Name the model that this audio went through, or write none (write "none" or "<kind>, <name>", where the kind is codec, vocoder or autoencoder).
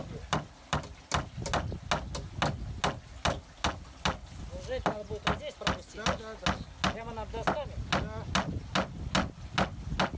none